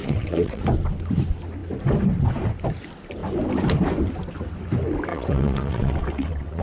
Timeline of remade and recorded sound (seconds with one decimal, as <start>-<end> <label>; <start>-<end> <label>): 0.0-0.6 remade; 0.6-5.1 recorded; 5.1-6.6 remade